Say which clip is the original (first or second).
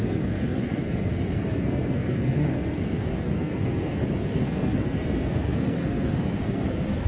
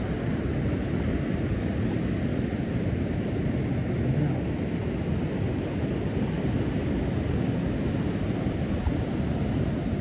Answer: second